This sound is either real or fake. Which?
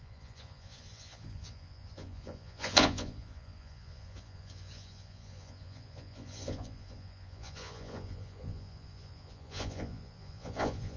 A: fake